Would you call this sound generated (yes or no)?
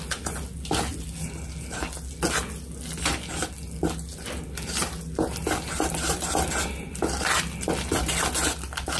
no